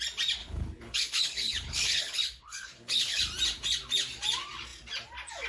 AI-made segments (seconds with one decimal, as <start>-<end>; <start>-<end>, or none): 0.4-3.2